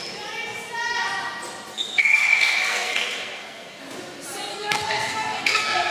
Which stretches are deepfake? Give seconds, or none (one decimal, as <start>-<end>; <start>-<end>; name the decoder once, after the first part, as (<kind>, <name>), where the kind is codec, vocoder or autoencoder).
1.7-3.8 (codec, SNAC); 4.5-5.9